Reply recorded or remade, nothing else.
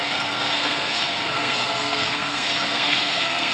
remade